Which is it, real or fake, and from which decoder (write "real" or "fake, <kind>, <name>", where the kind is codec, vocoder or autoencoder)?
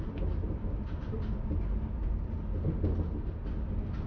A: real